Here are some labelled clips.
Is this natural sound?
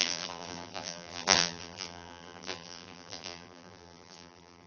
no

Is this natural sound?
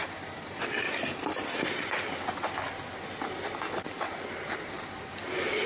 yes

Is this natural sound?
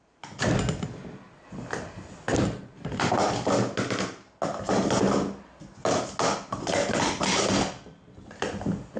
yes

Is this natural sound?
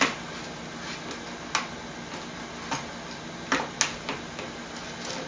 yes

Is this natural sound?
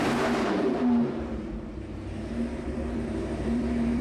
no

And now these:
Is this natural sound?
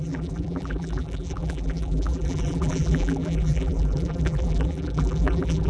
no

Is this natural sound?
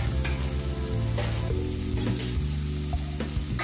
yes